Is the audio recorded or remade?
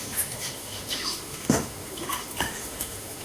remade